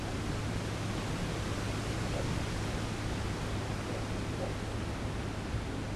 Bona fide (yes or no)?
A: yes